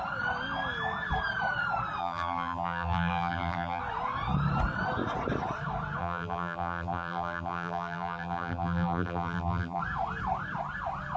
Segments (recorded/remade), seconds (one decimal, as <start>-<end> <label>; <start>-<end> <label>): 0.0-2.0 recorded; 2.0-3.8 remade; 3.8-6.0 recorded; 6.0-9.8 remade; 9.8-11.2 recorded